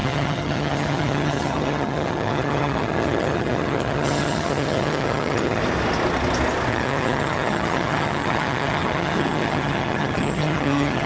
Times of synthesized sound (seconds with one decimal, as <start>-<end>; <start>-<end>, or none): 0.0-5.6; 6.7-11.1